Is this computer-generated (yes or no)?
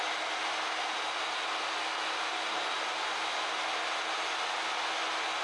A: no